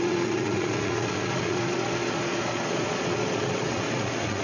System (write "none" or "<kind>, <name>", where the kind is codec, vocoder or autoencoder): vocoder, Vocos